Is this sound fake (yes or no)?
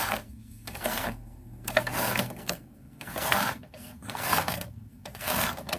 yes